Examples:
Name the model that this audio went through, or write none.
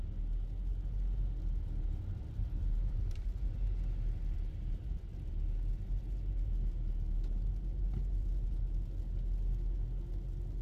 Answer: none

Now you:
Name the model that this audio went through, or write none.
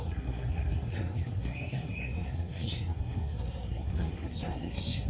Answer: codec, SNAC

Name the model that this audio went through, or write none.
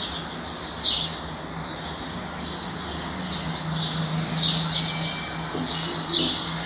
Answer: none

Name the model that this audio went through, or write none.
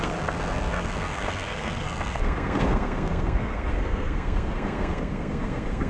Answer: codec, SNAC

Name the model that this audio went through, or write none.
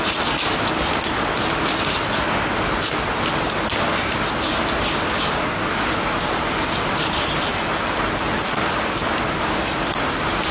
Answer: none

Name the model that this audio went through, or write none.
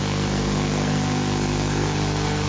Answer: codec, SNAC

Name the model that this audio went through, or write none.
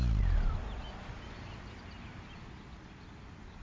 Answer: none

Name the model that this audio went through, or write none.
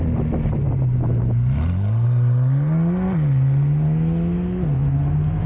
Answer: none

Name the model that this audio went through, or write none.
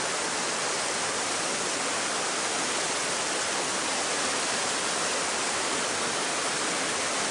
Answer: none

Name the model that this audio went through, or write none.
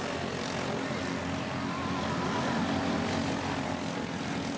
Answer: none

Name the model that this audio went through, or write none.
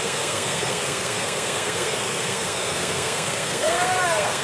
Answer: codec, SNAC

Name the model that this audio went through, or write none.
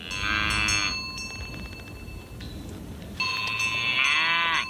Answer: none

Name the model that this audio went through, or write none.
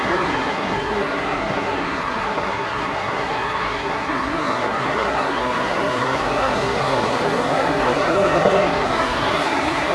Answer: codec, SNAC